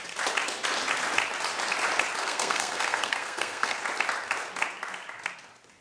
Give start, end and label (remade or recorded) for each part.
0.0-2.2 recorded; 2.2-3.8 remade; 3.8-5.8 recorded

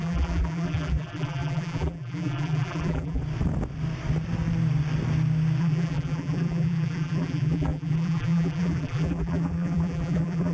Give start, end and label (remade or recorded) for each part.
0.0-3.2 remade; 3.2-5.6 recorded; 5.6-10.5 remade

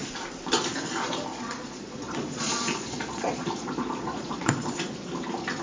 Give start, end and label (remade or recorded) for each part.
0.0-1.3 recorded; 1.3-4.7 remade; 4.7-5.6 recorded

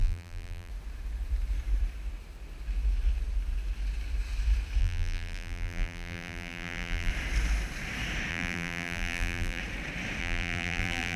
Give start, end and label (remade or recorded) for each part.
0.0-0.7 remade; 0.7-4.8 recorded; 4.8-7.1 remade; 7.1-8.3 recorded; 8.3-9.6 remade; 9.6-10.2 recorded; 10.2-11.2 remade